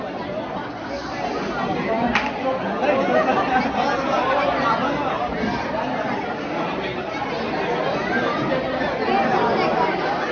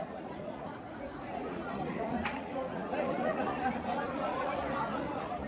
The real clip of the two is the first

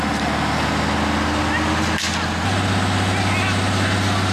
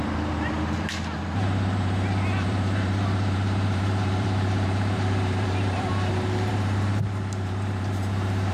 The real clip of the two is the first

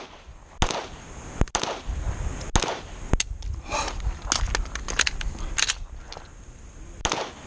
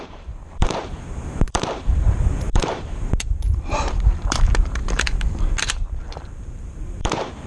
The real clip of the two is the first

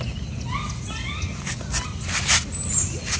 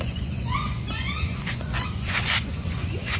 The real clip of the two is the first